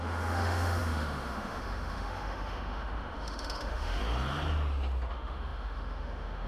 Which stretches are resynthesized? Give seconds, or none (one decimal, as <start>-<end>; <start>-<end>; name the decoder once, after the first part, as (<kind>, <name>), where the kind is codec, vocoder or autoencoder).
0.0-4.0 (autoencoder, DAC-VAE); 5.1-6.5